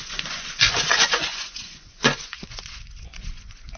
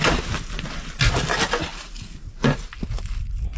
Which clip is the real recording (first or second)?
second